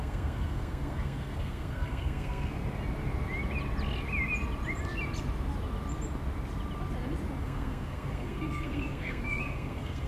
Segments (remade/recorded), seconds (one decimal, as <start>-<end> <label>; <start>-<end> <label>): 0.0-2.6 remade; 2.6-7.4 recorded; 7.4-10.1 remade